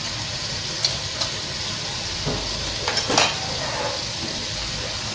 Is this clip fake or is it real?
real